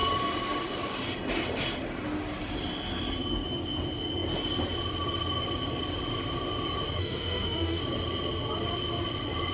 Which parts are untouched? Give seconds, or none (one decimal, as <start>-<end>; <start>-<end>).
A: 0.0-7.0; 7.8-9.5